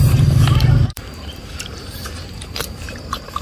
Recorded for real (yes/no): no